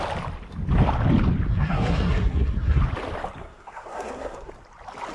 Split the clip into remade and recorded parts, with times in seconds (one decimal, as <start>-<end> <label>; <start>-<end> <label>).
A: 0.0-1.5 recorded; 1.5-2.8 remade; 2.8-3.4 recorded; 3.4-4.5 remade; 4.5-5.1 recorded